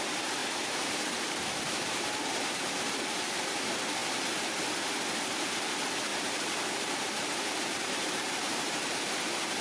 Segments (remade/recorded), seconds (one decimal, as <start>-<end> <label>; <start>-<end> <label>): 0.0-0.4 recorded; 0.4-3.6 remade; 3.6-6.1 recorded; 6.1-9.1 remade; 9.1-9.6 recorded